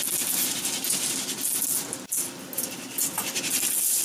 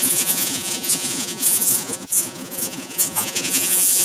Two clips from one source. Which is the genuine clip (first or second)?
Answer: first